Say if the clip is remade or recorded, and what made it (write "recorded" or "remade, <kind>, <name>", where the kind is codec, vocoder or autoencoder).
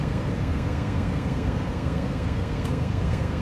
remade, codec, SNAC